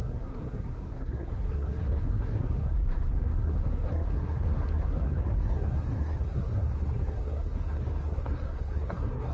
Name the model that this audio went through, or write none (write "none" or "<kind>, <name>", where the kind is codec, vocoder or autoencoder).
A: codec, SNAC